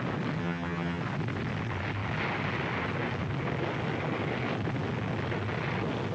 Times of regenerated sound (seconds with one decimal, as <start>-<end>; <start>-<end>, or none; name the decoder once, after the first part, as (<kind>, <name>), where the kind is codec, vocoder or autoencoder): 0.4-1.0 (vocoder, HiFi-GAN)

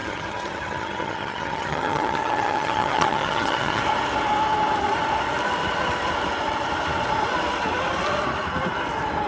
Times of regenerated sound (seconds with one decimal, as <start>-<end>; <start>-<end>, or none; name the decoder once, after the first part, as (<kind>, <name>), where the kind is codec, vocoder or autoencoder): 0.0-3.8 (vocoder, HiFi-GAN)

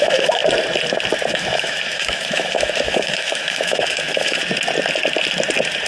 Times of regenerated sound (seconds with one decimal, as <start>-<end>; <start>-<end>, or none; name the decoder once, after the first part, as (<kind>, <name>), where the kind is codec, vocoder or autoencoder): 0.0-0.4 (autoencoder, DAC-VAE); 1.3-4.4

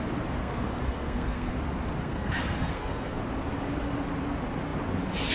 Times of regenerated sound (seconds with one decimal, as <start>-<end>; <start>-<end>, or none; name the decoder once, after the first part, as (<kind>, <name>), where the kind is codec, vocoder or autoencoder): 0.4-1.5 (codec, SNAC); 2.0-3.2

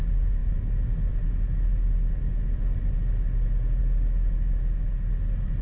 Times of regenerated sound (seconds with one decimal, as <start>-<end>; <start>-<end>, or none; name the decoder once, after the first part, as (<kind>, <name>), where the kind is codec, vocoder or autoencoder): none